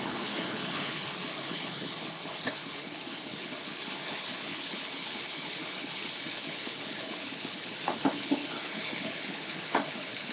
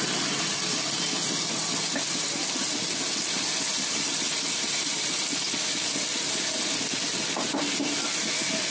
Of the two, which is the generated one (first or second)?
first